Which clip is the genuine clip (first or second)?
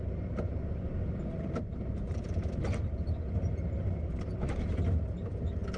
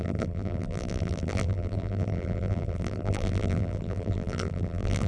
first